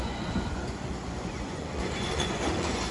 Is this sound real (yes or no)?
no